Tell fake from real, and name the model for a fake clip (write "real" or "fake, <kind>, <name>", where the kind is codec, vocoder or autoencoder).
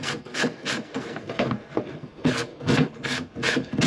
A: fake, codec, SNAC